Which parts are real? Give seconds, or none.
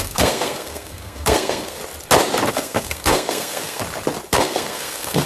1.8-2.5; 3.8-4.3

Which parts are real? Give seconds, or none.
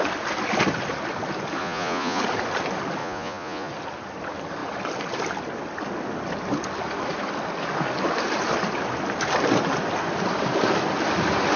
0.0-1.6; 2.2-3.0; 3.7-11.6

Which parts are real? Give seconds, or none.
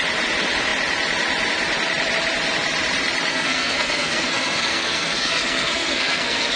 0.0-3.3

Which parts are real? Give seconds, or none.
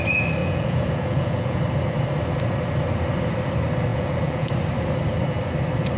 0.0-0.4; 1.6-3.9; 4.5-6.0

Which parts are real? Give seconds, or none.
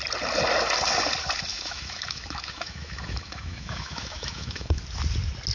0.0-1.5; 4.8-5.5